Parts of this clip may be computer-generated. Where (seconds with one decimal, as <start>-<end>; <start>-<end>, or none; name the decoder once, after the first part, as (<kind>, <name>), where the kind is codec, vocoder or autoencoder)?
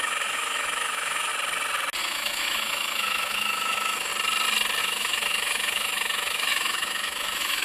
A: 0.0-1.3 (autoencoder, DAC-VAE); 2.0-4.1; 4.8-7.6